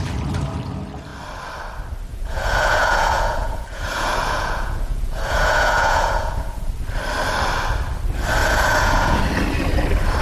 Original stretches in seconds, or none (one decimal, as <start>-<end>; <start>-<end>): 0.0-2.1; 6.7-8.4; 9.2-10.2